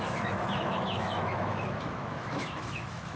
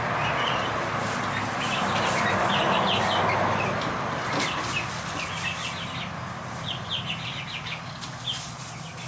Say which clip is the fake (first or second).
first